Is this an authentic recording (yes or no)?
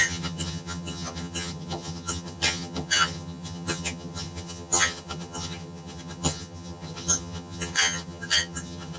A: no